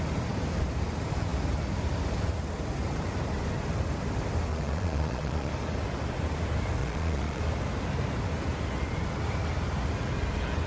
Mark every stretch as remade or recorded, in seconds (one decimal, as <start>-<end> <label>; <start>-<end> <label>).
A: 0.0-4.5 recorded; 4.5-5.5 remade; 5.5-6.8 recorded; 6.8-7.4 remade; 7.4-10.7 recorded